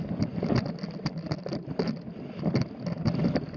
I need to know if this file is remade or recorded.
recorded